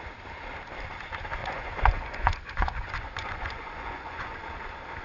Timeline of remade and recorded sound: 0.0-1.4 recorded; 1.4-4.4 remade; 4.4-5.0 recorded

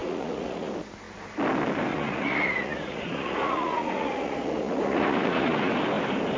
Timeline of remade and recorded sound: 0.0-0.7 remade; 0.7-1.9 recorded; 1.9-5.7 remade; 5.7-6.4 recorded